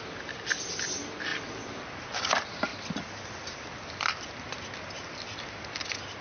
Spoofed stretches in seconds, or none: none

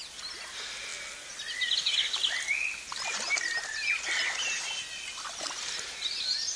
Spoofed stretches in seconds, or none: none

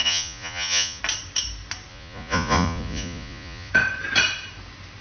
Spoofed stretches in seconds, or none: 0.0-1.0 (vocoder, Vocos); 1.9-3.7

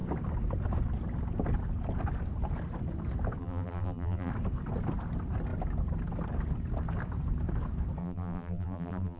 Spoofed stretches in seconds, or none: 3.4-4.3 (vocoder, BigVGAN v2); 8.0-9.2

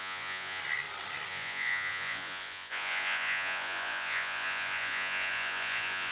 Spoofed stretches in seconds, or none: 0.0-0.6 (vocoder, Vocos); 1.3-6.1

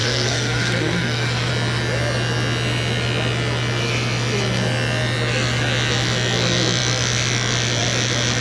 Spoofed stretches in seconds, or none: 0.0-1.5 (codec, SNAC)

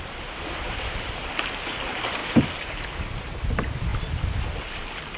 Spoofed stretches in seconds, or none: none

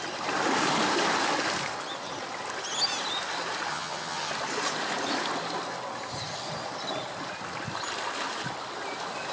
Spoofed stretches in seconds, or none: 3.7-4.3 (vocoder, HiFi-GAN)